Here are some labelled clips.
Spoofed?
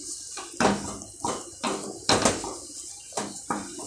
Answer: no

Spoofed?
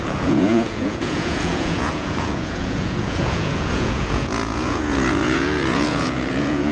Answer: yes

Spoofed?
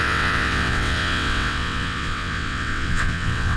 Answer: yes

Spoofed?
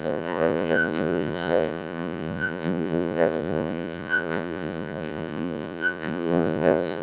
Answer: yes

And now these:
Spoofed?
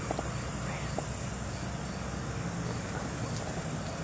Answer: no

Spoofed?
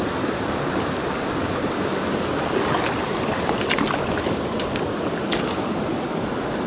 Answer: no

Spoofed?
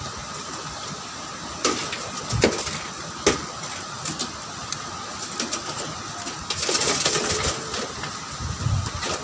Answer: no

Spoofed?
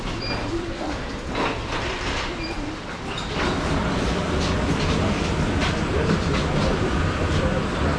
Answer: yes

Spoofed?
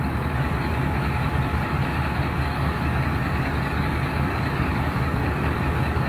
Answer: yes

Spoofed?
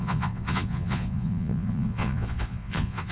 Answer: yes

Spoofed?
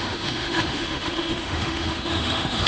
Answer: yes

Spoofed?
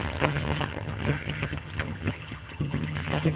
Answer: yes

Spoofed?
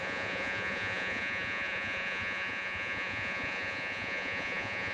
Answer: yes